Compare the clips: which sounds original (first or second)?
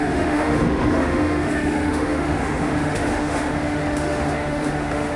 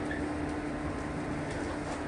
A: second